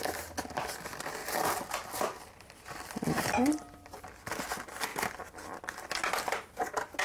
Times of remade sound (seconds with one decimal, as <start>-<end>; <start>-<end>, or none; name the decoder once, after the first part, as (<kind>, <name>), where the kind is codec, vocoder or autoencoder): 1.2-4.0 (vocoder, BigVGAN v2)